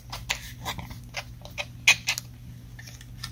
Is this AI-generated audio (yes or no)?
no